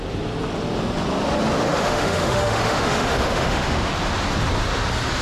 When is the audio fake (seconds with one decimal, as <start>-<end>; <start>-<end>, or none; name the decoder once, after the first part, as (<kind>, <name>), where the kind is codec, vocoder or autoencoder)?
1.7-3.9 (autoencoder, DAC-VAE)